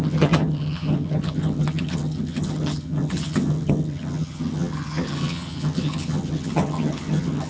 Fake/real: fake